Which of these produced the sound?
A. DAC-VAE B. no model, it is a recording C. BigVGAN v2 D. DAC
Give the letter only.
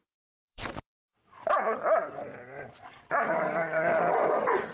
C